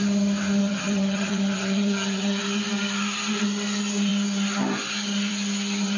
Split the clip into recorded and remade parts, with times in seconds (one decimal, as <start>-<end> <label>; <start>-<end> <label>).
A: 0.0-0.6 recorded; 0.6-2.4 remade; 2.4-6.0 recorded